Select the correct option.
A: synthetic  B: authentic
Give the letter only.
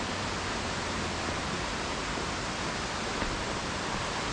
B